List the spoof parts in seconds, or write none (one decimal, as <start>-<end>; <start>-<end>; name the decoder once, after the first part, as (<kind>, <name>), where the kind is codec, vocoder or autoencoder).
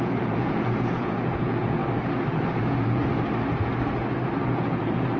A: 0.0-1.8 (vocoder, Vocos); 2.3-3.0; 4.4-5.2